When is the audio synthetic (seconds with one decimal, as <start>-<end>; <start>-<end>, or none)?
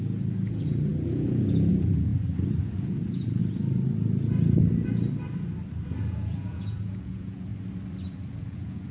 0.0-2.1; 2.6-3.4; 6.0-7.5; 8.3-8.9